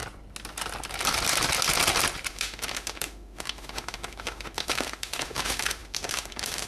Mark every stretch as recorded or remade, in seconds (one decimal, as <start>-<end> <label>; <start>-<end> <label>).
0.0-2.3 recorded; 2.3-6.7 remade